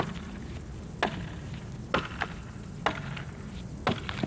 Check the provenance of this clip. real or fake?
real